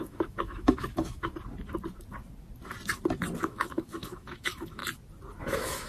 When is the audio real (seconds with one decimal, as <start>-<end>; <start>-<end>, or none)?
1.3-3.4; 4.8-5.4